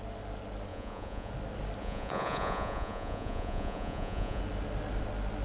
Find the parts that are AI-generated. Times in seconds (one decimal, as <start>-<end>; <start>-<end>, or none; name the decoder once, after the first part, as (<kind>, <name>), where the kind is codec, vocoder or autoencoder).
0.7-1.3 (vocoder, Vocos); 1.8-4.4